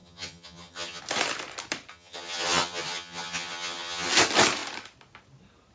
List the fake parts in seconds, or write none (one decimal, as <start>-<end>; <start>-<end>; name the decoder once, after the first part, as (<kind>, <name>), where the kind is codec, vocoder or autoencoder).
0.0-1.0 (vocoder, HiFi-GAN); 1.9-4.1